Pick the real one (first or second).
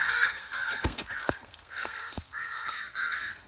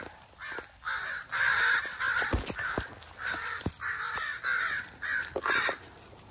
second